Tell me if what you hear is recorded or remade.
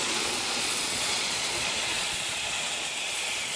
remade